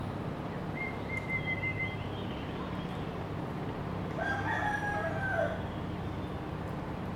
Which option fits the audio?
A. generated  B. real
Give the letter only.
B